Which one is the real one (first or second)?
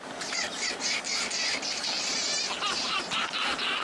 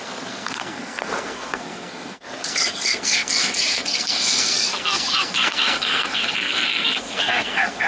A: first